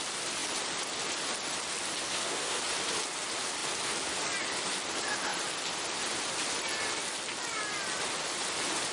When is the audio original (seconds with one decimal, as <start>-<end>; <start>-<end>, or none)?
0.0-2.0; 2.6-8.9

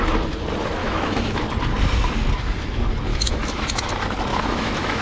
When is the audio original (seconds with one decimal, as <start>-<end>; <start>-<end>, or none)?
0.0-0.8; 1.4-3.1; 3.9-4.3

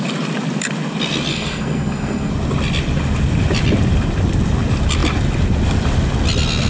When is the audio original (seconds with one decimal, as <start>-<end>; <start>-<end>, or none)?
0.0-1.3; 2.3-6.7